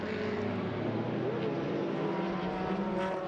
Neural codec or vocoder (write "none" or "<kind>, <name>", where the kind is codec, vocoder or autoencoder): none